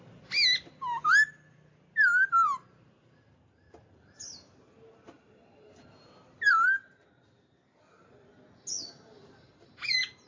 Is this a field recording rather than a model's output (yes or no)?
yes